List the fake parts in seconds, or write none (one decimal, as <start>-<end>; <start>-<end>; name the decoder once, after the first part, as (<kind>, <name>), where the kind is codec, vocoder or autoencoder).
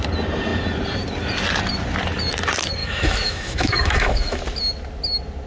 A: 2.8-4.4 (autoencoder, DAC-VAE)